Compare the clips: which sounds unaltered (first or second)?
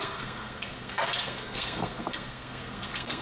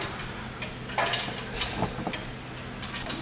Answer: second